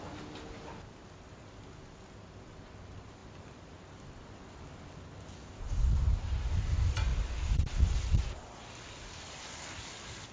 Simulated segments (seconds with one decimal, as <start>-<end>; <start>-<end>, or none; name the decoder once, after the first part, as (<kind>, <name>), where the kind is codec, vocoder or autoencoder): none